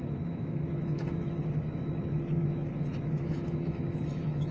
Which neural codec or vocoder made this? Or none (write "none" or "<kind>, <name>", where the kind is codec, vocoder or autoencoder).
autoencoder, DAC-VAE